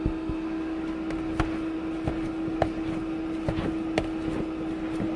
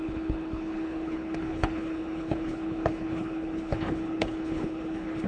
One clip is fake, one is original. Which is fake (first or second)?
second